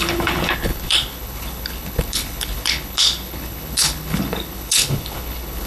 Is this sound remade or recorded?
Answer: remade